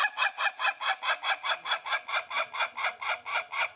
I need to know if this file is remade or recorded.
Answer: recorded